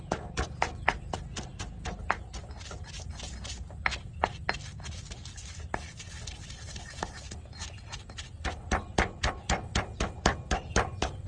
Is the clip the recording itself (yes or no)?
yes